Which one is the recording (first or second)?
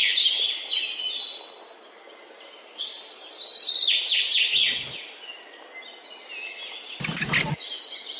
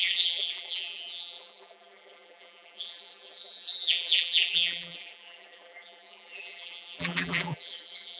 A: first